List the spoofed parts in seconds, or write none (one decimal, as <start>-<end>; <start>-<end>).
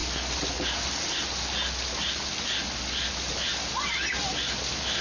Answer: none